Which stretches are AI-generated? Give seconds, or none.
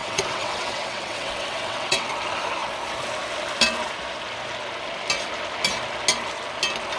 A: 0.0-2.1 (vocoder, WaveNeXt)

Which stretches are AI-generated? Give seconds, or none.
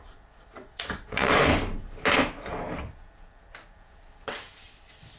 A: 0.0-1.3 (vocoder, WaveNeXt); 4.1-5.2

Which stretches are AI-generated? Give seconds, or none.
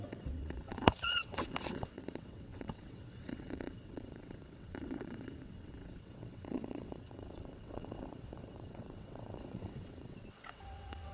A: 0.0-11.1 (vocoder, WaveNeXt)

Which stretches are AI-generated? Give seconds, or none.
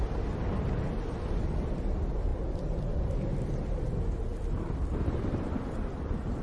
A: none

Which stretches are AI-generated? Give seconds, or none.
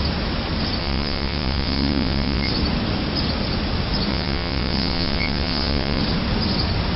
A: 0.8-2.5 (vocoder, WaveNeXt); 4.1-6.0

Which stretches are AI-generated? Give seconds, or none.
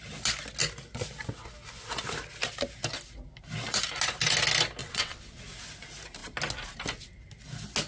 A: 4.8-5.4 (vocoder, WaveNeXt)